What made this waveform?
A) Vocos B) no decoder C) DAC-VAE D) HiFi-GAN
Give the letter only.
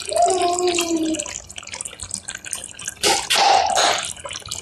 B